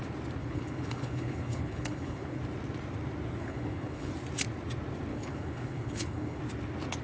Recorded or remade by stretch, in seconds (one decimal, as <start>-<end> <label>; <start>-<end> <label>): 0.0-0.4 recorded; 0.4-2.4 remade; 2.4-3.4 recorded; 3.4-4.1 remade; 4.1-5.1 recorded; 5.1-6.4 remade; 6.4-7.0 recorded